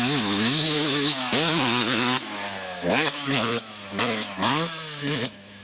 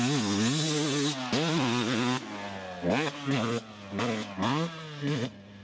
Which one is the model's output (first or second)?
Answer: first